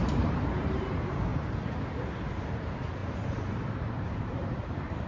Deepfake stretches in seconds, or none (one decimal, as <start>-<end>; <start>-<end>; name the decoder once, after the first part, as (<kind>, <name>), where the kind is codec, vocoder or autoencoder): 0.0-1.3 (vocoder, BigVGAN v2); 2.4-5.1